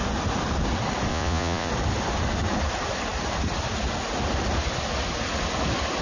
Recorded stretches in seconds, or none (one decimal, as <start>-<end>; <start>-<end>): 0.0-1.1; 1.7-6.0